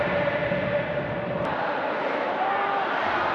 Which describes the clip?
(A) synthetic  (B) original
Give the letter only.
B